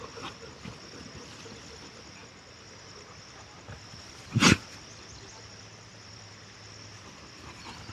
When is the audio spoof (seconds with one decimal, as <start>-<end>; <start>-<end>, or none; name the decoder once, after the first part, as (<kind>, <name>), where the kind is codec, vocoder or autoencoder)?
none